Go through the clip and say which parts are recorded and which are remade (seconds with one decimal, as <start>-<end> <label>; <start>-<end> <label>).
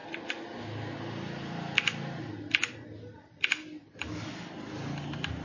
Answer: 0.0-5.4 recorded